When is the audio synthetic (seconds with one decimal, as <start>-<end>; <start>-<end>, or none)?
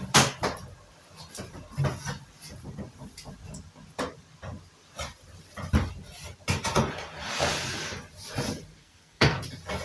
8.8-9.4